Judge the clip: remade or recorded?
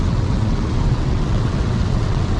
remade